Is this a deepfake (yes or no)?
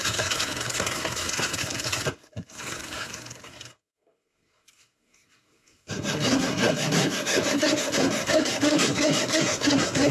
yes